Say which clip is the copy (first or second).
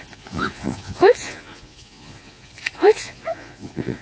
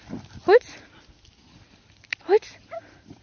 first